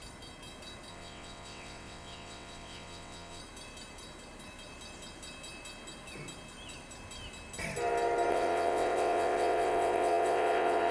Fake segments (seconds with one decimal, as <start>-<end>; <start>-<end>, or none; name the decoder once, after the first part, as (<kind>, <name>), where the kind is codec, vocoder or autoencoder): 0.9-3.4 (vocoder, WaveNeXt); 8.3-10.9